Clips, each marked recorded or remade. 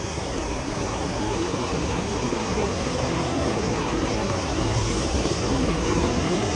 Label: remade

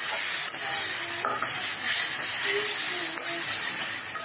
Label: recorded